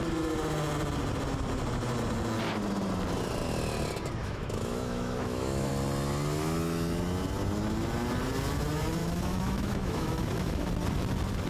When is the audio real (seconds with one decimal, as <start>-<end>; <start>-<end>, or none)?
0.0-4.2; 5.7-9.0; 10.7-11.5